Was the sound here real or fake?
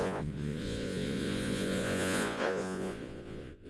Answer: fake